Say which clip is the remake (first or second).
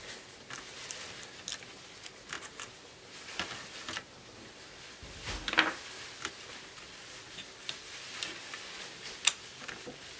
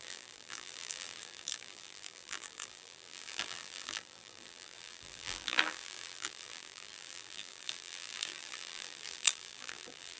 second